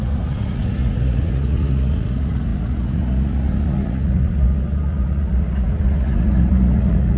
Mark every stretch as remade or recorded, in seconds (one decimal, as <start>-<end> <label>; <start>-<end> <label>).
0.0-7.2 remade